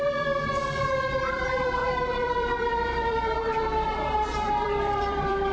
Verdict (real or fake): fake